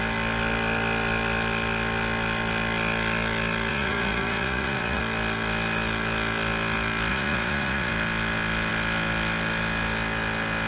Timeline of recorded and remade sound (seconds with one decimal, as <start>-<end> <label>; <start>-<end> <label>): 0.0-3.7 recorded; 3.7-5.0 remade; 5.0-7.1 recorded; 7.1-7.9 remade; 7.9-10.7 recorded

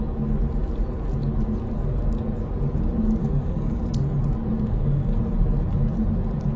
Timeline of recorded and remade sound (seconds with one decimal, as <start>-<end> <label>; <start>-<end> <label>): 0.0-3.2 recorded; 3.2-3.8 remade; 3.8-4.7 recorded; 4.7-5.2 remade; 5.2-6.6 recorded